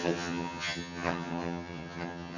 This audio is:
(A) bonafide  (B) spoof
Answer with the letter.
B